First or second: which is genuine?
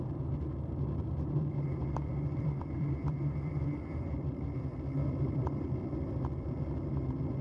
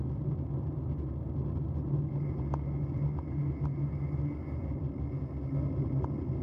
second